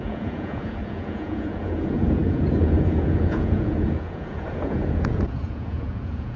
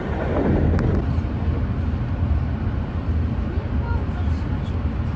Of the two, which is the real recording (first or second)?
second